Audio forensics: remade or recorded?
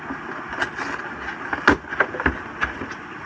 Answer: recorded